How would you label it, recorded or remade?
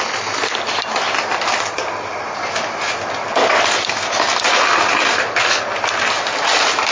recorded